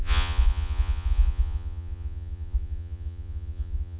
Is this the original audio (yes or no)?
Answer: no